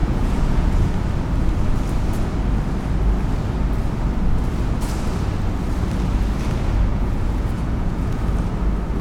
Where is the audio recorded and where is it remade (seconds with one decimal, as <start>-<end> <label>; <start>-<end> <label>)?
0.0-0.9 remade; 0.9-6.9 recorded; 6.9-8.2 remade; 8.2-9.0 recorded